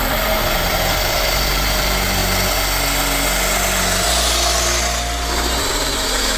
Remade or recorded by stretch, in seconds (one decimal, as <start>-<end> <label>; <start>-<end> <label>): 0.0-2.2 remade; 2.2-5.7 recorded; 5.7-6.4 remade